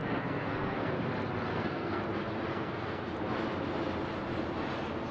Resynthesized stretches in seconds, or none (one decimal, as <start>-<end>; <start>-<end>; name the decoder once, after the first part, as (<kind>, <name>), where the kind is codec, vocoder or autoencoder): 0.0-1.0 (codec, SNAC); 1.5-2.0; 2.5-3.0